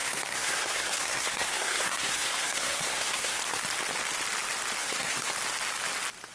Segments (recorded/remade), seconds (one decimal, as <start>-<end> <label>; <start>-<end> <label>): 0.0-3.4 remade; 3.4-4.8 recorded; 4.8-5.3 remade; 5.3-6.3 recorded